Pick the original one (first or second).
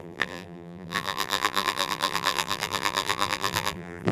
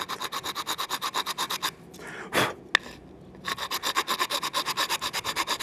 second